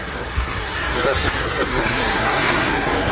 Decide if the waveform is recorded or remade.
remade